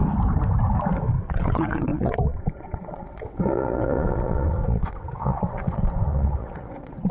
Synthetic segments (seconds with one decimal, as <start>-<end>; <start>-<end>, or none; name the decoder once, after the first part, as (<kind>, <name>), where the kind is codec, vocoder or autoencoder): 1.3-7.1 (vocoder, WaveNeXt)